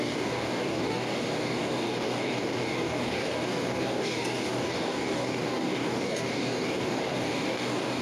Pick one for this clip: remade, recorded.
remade